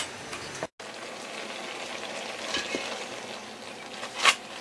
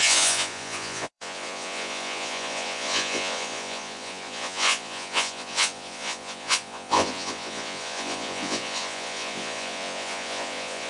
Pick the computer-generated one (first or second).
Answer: second